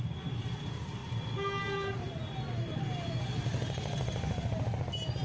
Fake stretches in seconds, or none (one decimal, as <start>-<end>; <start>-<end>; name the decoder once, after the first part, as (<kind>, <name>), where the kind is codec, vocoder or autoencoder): none